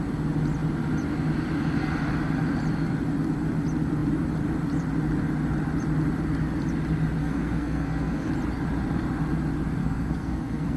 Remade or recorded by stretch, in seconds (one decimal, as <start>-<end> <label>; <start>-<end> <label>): 0.0-7.2 recorded; 7.2-8.3 remade; 8.3-9.8 recorded; 9.8-10.8 remade